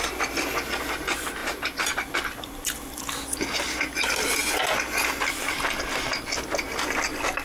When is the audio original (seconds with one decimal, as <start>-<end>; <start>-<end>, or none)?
0.0-1.4; 3.0-7.4